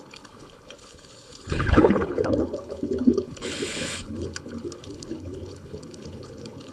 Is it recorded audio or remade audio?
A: remade